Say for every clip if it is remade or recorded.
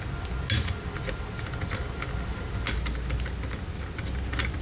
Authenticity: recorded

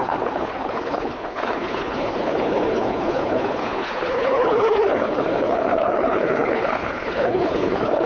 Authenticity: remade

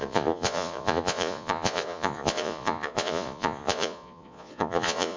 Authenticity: remade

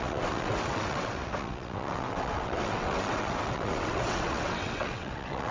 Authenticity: remade